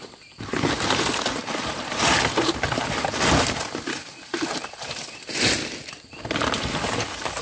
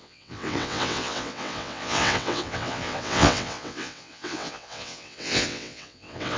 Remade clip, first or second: second